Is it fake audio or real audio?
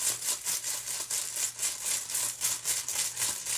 real